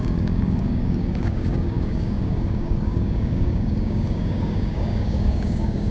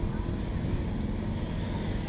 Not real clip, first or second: first